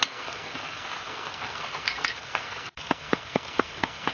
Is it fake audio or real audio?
fake